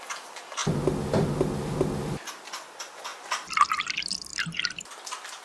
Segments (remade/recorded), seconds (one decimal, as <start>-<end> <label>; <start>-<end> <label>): 0.0-5.4 recorded